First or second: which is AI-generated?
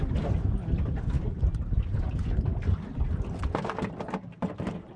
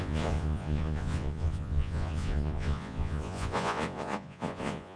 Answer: second